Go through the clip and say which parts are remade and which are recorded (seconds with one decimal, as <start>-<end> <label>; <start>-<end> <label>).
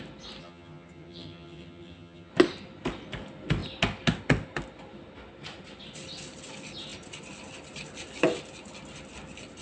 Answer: 0.0-0.4 recorded; 0.4-2.3 remade; 2.3-9.6 recorded